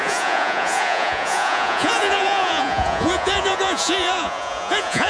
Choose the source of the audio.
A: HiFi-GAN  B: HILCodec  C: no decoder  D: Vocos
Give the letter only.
D